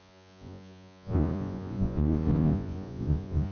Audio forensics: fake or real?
fake